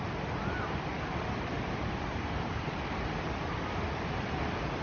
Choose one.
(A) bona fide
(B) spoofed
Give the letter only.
A